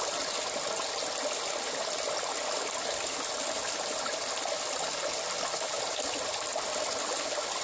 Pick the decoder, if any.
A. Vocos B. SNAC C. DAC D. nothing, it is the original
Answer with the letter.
D